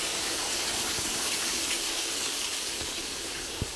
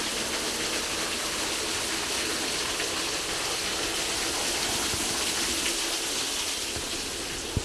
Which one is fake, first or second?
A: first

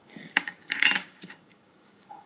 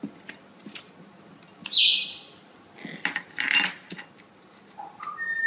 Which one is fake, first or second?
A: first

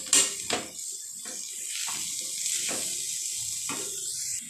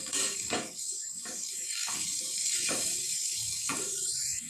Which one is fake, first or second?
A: second